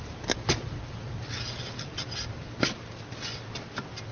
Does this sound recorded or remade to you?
recorded